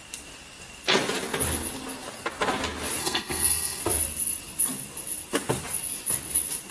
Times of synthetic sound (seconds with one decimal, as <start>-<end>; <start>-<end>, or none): 3.0-3.8